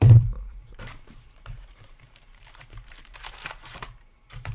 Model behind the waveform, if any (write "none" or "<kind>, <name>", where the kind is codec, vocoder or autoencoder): vocoder, BigVGAN v2